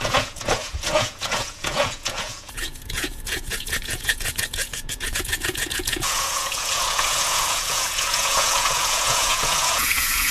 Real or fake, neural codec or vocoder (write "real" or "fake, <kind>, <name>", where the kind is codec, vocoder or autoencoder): fake, vocoder, Vocos